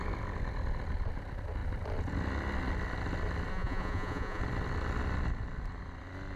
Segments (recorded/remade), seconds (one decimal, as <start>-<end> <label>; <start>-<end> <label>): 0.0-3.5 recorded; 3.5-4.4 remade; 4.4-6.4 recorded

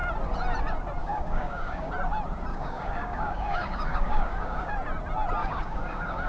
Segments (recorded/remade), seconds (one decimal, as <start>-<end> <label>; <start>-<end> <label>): 0.0-1.0 recorded; 1.0-1.9 remade; 1.9-2.5 recorded; 2.5-4.7 remade; 4.7-5.4 recorded; 5.4-6.3 remade

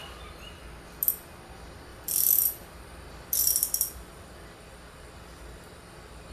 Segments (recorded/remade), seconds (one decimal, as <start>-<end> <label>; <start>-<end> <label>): 0.0-1.9 recorded; 1.9-5.7 remade; 5.7-6.3 recorded

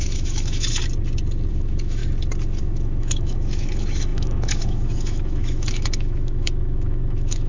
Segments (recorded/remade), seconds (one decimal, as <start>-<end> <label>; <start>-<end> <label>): 0.0-0.8 remade; 0.8-1.5 recorded; 1.5-2.0 remade; 2.0-2.6 recorded; 2.6-7.5 remade

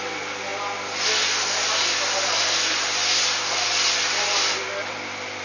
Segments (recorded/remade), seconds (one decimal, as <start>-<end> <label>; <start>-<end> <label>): 0.0-5.4 recorded

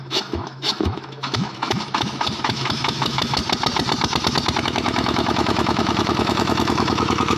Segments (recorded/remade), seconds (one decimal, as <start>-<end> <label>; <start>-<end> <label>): 0.0-3.4 remade; 3.4-4.6 recorded; 4.6-7.4 remade

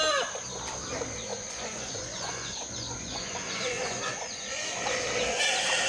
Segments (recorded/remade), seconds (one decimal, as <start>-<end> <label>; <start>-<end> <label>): 0.0-1.3 recorded; 1.3-4.8 remade; 4.8-5.9 recorded